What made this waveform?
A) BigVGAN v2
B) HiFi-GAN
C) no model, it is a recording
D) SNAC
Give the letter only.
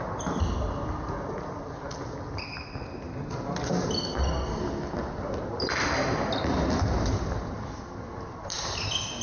C